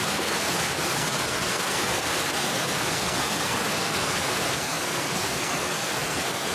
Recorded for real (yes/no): no